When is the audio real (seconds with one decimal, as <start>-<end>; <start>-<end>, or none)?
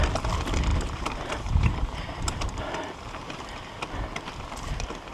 0.0-0.7; 3.8-5.1